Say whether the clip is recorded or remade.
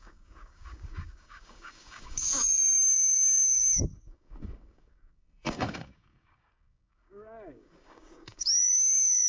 remade